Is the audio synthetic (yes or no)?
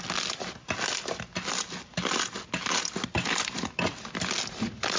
no